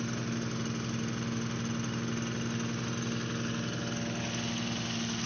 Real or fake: real